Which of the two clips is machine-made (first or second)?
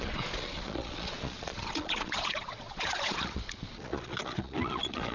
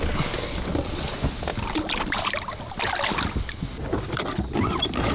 first